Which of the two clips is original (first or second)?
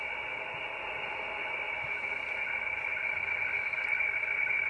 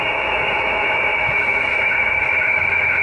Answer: first